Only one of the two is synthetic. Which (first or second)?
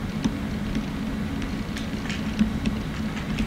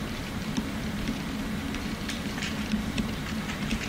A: second